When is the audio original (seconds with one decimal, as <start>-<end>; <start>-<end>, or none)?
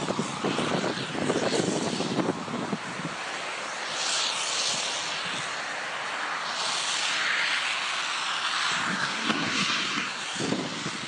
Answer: 0.0-8.9; 10.2-11.1